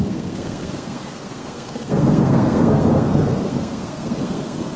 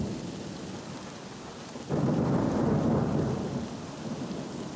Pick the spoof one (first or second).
first